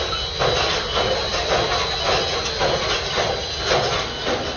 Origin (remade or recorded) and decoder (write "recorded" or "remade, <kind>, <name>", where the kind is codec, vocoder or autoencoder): recorded